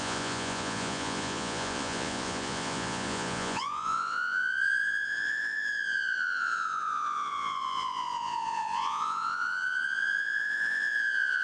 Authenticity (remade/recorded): remade